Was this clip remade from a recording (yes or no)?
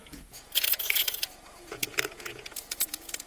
yes